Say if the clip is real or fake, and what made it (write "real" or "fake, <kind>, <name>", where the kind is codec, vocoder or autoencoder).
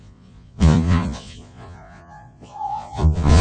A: fake, vocoder, Vocos